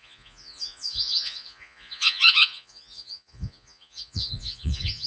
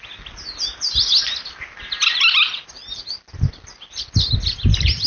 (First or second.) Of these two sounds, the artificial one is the first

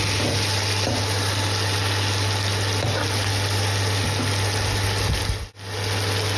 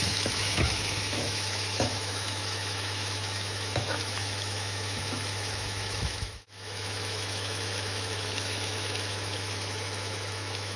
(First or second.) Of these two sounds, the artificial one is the second